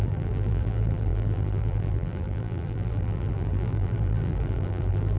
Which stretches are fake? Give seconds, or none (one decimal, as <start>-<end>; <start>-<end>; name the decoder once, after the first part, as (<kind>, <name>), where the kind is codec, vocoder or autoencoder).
0.0-5.2 (vocoder, BigVGAN v2)